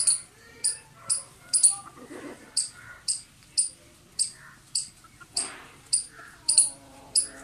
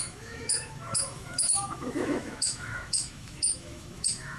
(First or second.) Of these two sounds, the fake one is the second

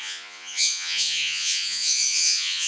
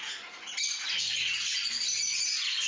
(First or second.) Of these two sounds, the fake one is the first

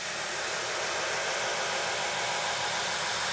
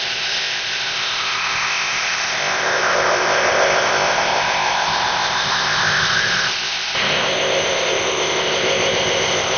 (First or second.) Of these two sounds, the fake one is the second